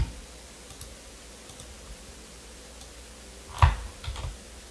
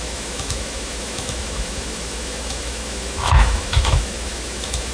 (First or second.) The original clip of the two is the first